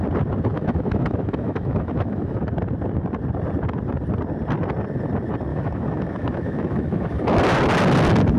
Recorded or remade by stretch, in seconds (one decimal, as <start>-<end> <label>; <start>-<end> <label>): 0.0-0.5 recorded; 0.5-2.4 remade; 2.4-5.5 recorded; 5.5-7.4 remade; 7.4-8.4 recorded

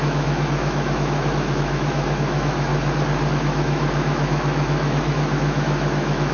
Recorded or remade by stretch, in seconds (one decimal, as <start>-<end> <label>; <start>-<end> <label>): 0.0-2.7 remade; 2.7-3.3 recorded; 3.3-6.3 remade

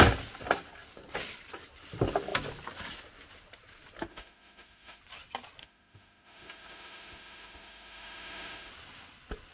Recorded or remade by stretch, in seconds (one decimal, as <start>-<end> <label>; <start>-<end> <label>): 0.0-4.1 recorded; 4.1-5.0 remade; 5.0-5.6 recorded; 5.6-8.7 remade; 8.7-9.5 recorded

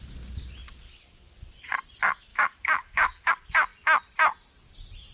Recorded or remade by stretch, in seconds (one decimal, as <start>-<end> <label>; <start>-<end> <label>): 0.0-2.3 recorded; 2.3-3.3 remade; 3.3-5.1 recorded

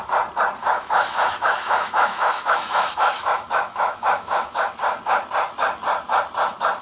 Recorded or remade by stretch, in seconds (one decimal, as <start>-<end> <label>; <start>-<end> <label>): 0.0-0.6 recorded; 0.6-4.7 remade; 4.7-6.8 recorded

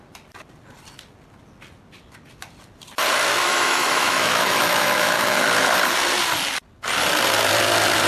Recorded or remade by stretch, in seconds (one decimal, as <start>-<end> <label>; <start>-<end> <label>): 0.0-3.4 recorded; 3.4-5.5 remade; 5.5-8.1 recorded

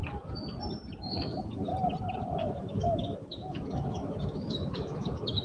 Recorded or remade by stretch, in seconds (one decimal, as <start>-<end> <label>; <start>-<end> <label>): 0.0-1.0 recorded; 1.0-1.7 remade; 1.7-2.4 recorded; 2.4-5.4 remade